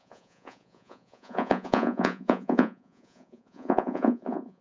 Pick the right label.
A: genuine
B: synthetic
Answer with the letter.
B